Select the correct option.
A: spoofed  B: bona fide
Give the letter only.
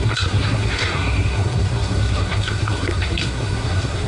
A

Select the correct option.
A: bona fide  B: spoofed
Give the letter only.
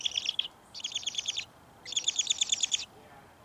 A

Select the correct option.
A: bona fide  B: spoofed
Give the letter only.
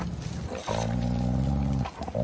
A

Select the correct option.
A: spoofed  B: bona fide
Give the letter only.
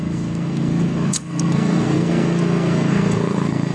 A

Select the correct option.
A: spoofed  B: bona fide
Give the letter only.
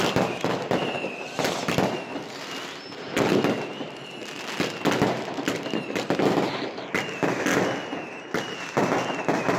B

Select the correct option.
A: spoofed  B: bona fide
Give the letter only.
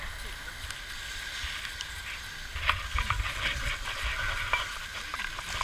B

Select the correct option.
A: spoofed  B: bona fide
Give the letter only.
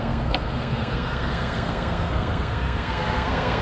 A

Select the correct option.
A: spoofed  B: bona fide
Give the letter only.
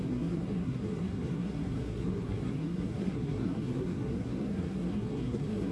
A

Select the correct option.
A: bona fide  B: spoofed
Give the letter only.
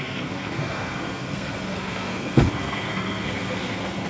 B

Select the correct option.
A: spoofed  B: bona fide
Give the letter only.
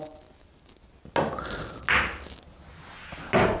B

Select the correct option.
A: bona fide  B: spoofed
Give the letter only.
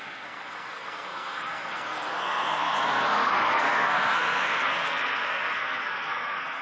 B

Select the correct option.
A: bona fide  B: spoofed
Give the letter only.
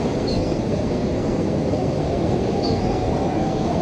B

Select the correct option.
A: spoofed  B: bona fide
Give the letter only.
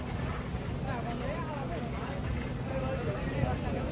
B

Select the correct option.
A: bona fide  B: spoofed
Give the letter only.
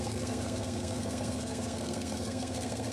B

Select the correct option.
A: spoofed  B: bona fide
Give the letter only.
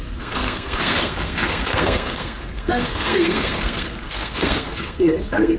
A